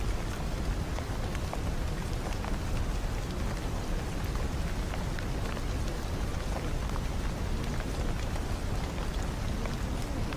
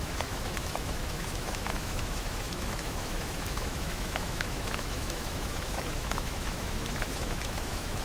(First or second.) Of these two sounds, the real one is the first